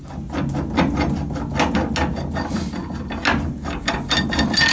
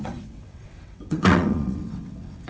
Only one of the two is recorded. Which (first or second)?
first